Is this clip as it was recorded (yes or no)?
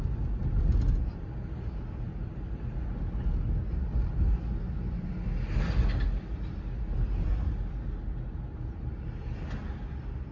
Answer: yes